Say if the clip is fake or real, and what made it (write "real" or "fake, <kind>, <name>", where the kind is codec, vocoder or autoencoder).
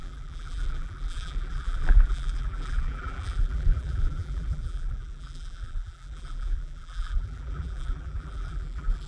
fake, vocoder, BigVGAN v2